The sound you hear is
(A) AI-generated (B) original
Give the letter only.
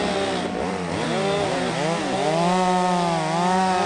B